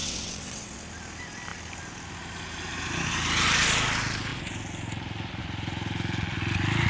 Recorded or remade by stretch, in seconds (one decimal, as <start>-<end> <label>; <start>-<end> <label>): 0.0-0.8 remade; 0.8-6.9 recorded